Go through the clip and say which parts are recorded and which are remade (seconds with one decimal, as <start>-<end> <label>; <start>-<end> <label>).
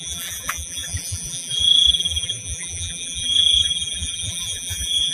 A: 0.0-5.1 remade